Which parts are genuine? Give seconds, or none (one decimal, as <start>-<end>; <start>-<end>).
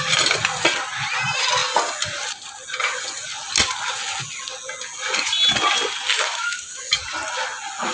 0.0-6.1; 6.8-7.9